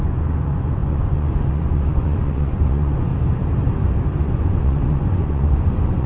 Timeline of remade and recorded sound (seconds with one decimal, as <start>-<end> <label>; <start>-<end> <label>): 0.0-3.1 remade; 3.1-4.2 recorded; 4.2-6.1 remade